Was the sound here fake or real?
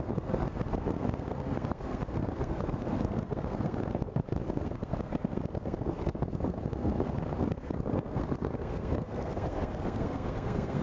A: fake